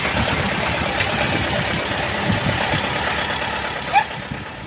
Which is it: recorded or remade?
remade